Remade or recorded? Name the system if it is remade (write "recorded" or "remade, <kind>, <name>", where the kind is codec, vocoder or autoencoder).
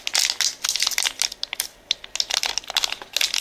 recorded